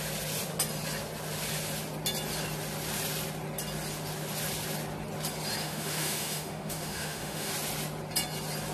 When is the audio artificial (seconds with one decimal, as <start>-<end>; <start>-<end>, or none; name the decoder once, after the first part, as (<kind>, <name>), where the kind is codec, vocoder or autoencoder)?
5.6-7.5 (autoencoder, DAC-VAE)